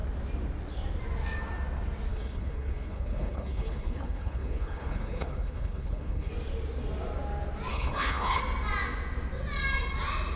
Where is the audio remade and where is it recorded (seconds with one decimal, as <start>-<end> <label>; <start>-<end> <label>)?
0.0-2.1 recorded; 2.1-6.3 remade; 6.3-7.7 recorded; 7.7-8.4 remade; 8.4-10.4 recorded